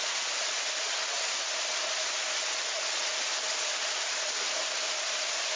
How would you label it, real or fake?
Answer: real